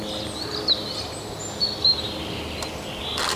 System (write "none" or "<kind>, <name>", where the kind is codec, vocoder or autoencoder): none